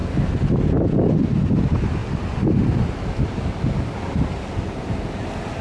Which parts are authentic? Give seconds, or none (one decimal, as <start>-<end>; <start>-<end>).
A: 0.0-5.6